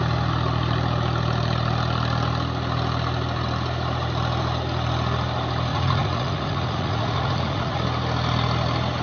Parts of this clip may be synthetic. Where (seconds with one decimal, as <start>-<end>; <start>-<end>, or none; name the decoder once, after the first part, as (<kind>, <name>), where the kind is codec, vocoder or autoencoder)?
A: 5.7-7.8 (vocoder, Vocos)